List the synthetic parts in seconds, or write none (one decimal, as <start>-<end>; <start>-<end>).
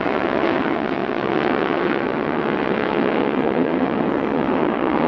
0.0-5.1